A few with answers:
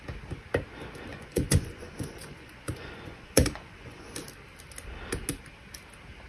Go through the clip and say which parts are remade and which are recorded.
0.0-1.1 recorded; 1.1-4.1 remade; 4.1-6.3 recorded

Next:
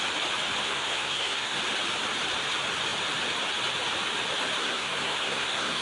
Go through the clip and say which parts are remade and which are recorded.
0.0-0.6 recorded; 0.6-1.6 remade; 1.6-4.6 recorded; 4.6-5.8 remade

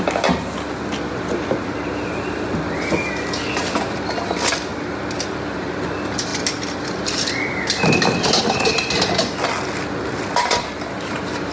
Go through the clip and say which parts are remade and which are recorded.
0.0-11.5 recorded

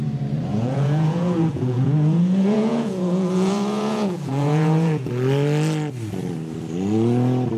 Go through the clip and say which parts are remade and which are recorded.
0.0-0.5 recorded; 0.5-5.1 remade; 5.1-7.6 recorded

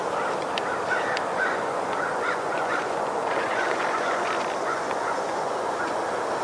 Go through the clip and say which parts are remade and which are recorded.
0.0-1.3 recorded; 1.3-4.3 remade; 4.3-4.7 recorded; 4.7-6.0 remade; 6.0-6.4 recorded

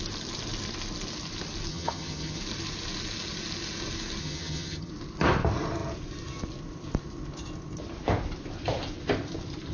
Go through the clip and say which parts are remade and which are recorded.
0.0-1.7 recorded; 1.7-2.4 remade; 2.4-4.2 recorded; 4.2-4.9 remade; 4.9-9.7 recorded

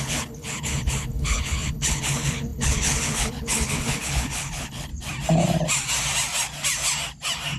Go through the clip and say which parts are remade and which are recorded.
0.0-4.9 remade; 4.9-7.6 recorded

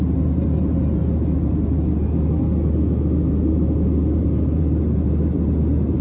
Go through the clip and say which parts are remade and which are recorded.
0.0-6.0 recorded